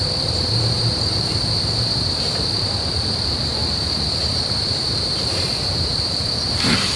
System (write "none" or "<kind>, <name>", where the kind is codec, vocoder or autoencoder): vocoder, BigVGAN v2